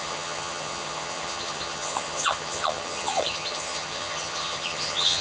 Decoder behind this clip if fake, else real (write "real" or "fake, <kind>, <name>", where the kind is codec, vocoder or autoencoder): fake, vocoder, HiFi-GAN